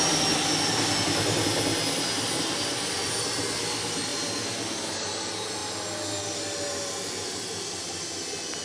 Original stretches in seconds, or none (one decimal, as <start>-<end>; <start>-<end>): 0.0-8.6